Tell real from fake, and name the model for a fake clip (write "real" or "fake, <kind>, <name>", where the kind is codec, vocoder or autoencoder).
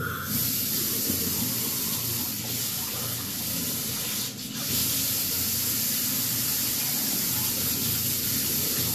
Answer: real